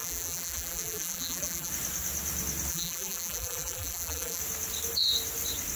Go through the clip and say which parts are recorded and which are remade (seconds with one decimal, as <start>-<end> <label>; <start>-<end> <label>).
0.0-1.7 remade; 1.7-2.7 recorded; 2.7-4.4 remade; 4.4-5.8 recorded